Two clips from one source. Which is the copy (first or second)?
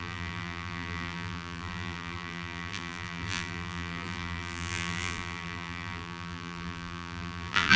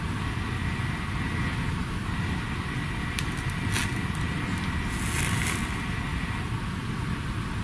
first